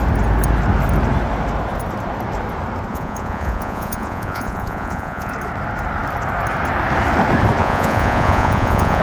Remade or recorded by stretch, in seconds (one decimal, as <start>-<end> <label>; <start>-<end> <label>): 0.0-2.9 recorded; 2.9-5.3 remade; 5.3-7.6 recorded; 7.6-9.0 remade